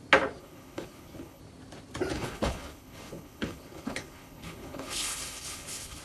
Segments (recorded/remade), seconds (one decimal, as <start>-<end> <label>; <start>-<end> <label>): 0.0-0.4 recorded; 0.4-1.4 remade; 1.4-2.1 recorded; 2.1-6.0 remade